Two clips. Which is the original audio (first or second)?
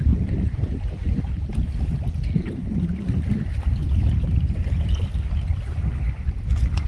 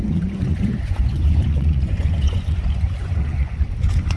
first